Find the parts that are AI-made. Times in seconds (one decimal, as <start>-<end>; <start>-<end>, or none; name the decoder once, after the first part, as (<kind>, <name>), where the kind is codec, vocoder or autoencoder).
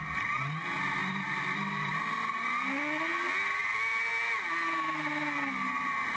1.0-1.9 (vocoder, BigVGAN v2)